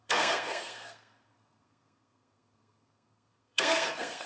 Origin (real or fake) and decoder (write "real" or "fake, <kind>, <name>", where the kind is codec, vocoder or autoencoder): fake, codec, SNAC